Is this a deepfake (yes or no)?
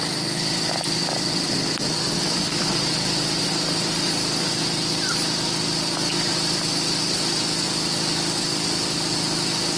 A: no